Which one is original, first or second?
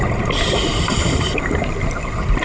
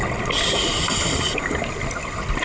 second